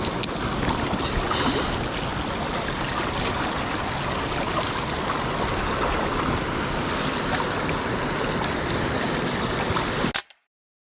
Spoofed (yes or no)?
no